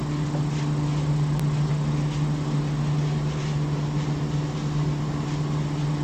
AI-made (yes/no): no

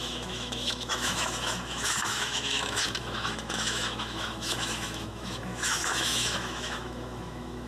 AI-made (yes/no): yes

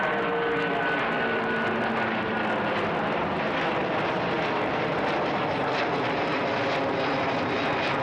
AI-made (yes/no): no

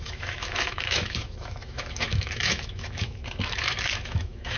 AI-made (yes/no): yes